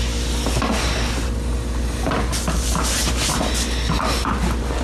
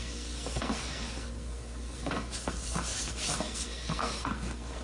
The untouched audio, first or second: first